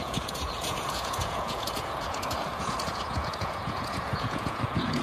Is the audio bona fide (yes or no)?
no